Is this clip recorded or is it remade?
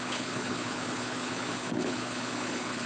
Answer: remade